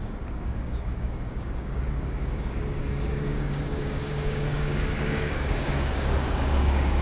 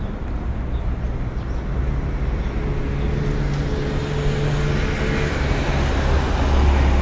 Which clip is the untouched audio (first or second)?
second